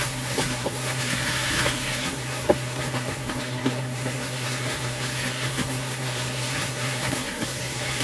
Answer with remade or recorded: remade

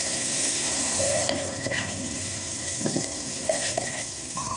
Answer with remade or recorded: remade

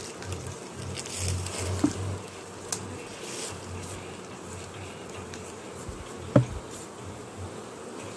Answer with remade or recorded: recorded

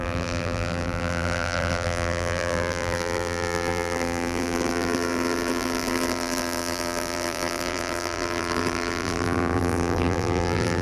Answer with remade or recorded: remade